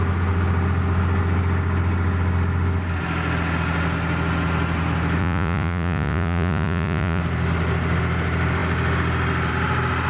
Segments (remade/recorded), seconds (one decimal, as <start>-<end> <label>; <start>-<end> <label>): 0.0-5.2 recorded; 5.2-7.2 remade; 7.2-10.1 recorded